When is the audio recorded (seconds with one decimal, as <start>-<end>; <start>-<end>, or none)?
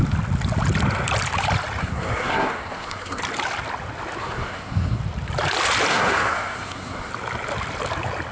0.0-1.8; 3.2-4.2; 5.0-5.9; 7.1-8.3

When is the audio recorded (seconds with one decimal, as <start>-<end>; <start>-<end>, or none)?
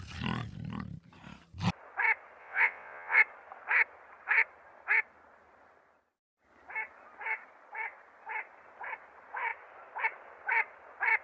0.0-2.4; 3.2-11.2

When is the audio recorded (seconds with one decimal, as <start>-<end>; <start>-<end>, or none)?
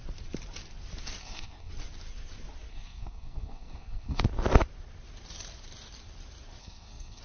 0.0-1.2; 1.7-2.7; 4.2-6.6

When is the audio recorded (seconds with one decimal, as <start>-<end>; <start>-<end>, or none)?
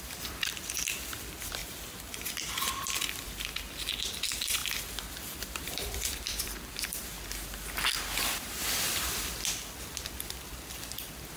4.6-5.5; 7.0-8.2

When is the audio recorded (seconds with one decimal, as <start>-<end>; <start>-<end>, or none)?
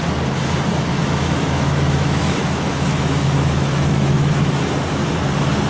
0.0-0.9; 4.3-5.7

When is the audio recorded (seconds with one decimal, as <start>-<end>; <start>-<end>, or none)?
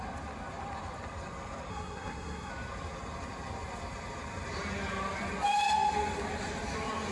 0.0-1.7; 2.5-7.1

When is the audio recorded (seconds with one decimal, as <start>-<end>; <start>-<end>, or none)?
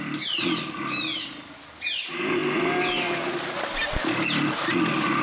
0.0-5.2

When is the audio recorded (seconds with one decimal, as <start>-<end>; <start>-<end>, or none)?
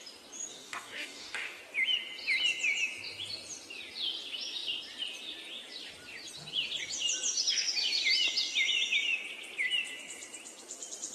0.0-0.5; 1.6-11.1